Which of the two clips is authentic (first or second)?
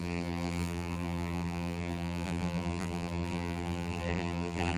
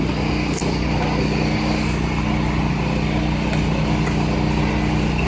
second